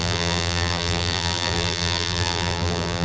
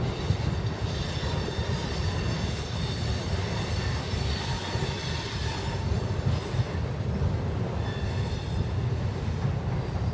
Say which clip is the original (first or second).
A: second